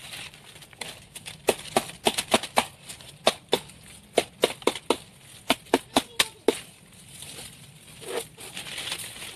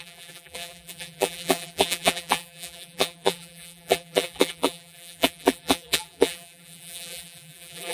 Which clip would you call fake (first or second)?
second